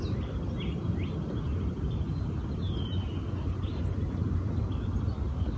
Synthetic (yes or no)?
no